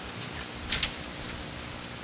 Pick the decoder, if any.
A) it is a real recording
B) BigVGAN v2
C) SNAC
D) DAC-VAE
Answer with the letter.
A